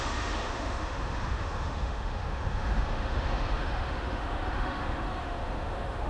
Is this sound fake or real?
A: fake